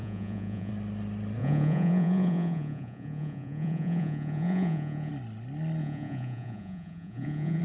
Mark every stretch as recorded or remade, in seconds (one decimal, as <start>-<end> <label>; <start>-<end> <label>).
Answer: 0.0-0.7 remade; 0.7-1.4 recorded; 1.4-5.1 remade; 5.1-5.8 recorded; 5.8-7.6 remade